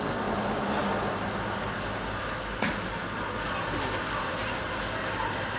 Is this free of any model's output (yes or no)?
yes